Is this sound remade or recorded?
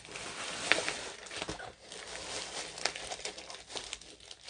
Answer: recorded